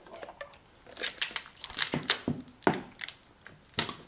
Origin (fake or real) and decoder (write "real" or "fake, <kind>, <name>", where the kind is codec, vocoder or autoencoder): real